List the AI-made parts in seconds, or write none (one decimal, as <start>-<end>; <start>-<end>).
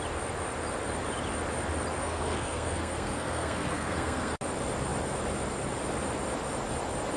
2.0-4.4